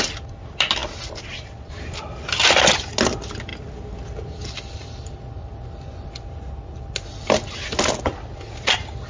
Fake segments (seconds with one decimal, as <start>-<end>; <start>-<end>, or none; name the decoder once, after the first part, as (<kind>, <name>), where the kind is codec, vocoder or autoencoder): none